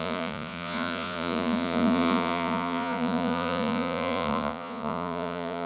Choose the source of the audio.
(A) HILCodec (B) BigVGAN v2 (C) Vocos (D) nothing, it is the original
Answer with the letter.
C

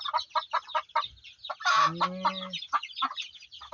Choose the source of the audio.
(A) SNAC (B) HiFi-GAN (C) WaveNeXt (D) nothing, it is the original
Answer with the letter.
D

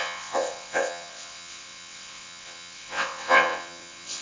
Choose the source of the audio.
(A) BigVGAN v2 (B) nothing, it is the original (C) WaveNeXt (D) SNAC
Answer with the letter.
C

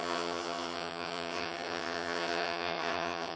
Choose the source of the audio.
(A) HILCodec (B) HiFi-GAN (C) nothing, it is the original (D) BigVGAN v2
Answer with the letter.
B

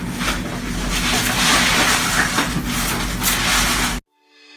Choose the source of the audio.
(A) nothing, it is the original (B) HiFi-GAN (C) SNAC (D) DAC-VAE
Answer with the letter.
A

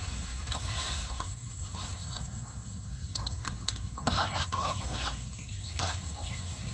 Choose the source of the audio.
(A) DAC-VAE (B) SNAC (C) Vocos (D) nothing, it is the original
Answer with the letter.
B